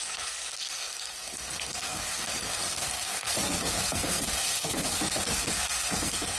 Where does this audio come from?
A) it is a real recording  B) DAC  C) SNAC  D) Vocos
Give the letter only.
C